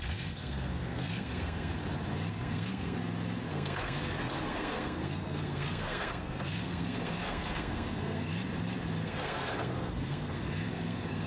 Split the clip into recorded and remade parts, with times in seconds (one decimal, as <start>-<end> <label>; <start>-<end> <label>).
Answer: 0.0-1.8 remade; 1.8-2.3 recorded; 2.3-3.0 remade; 3.0-3.5 recorded; 3.5-8.3 remade; 8.3-9.0 recorded; 9.0-11.3 remade

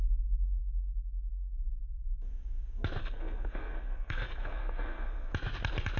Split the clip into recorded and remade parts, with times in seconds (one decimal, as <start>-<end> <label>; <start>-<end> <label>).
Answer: 0.0-3.0 recorded; 3.0-5.3 remade; 5.3-6.0 recorded

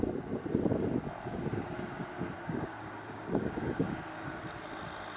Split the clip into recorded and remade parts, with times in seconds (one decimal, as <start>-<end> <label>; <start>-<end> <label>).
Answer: 0.0-1.3 recorded; 1.3-4.4 remade; 4.4-5.2 recorded

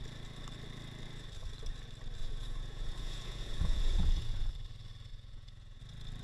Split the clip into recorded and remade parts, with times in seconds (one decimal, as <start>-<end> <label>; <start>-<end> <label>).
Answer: 0.0-2.2 recorded; 2.2-4.5 remade; 4.5-5.1 recorded; 5.1-5.8 remade; 5.8-6.2 recorded